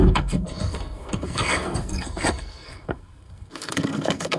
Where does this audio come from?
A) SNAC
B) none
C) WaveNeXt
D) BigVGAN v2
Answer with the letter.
A